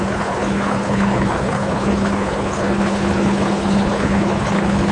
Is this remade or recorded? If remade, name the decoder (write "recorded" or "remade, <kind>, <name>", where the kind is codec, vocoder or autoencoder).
remade, codec, HILCodec